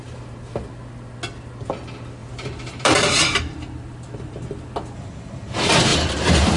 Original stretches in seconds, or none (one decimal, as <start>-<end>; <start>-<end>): 0.0-2.2; 5.3-5.9